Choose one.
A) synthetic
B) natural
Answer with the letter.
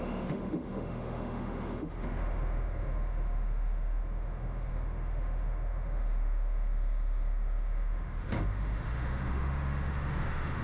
A